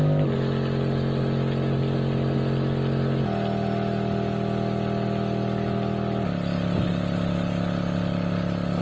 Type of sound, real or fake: real